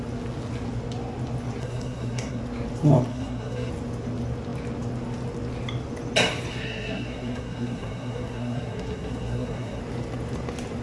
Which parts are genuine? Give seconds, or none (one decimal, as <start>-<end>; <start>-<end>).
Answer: 0.0-1.6; 2.4-3.1; 3.7-6.5; 9.8-10.8